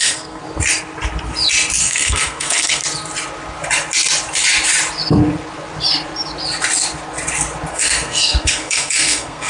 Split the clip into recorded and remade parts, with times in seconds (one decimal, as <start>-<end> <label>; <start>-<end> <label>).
0.0-0.4 remade; 0.4-1.8 recorded; 1.8-2.8 remade; 2.8-7.7 recorded; 7.7-9.5 remade